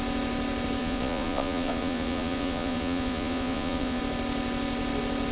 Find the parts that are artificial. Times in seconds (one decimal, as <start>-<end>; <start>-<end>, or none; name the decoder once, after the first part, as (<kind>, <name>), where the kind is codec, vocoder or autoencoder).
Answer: 0.8-4.0 (vocoder, Vocos)